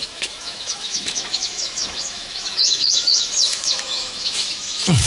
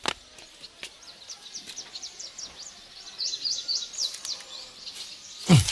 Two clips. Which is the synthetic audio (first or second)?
first